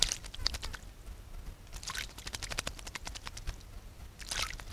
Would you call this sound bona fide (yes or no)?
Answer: yes